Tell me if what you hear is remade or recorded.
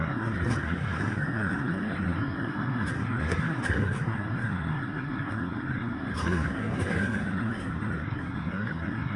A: remade